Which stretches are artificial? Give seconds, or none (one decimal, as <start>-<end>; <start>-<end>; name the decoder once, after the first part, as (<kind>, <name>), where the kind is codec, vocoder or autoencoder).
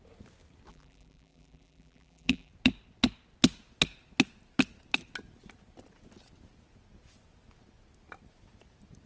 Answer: 0.7-2.5 (vocoder, BigVGAN v2)